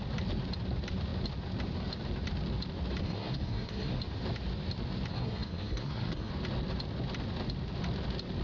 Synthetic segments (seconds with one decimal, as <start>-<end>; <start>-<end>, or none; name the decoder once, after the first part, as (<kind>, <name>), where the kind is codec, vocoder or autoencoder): 3.0-4.0 (codec, SNAC); 5.1-6.3